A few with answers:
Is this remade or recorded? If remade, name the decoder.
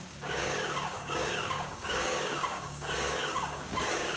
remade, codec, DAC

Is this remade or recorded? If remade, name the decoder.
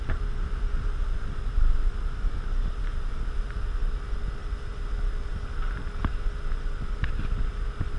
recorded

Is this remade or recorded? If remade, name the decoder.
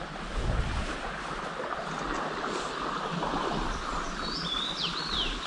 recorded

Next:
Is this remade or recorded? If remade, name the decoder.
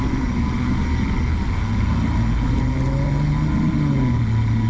recorded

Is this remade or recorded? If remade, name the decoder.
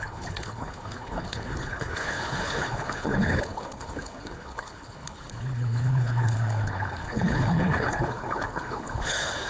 remade, codec, HILCodec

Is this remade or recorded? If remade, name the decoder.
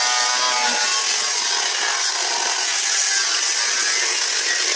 recorded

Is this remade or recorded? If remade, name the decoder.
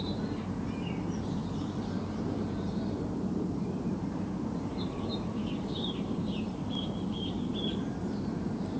remade, vocoder, BigVGAN v2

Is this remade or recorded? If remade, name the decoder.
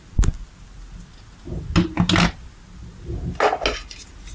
recorded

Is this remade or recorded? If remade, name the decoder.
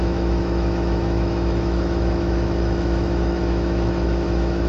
remade, autoencoder, DAC-VAE